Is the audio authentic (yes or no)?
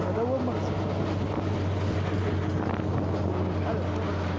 yes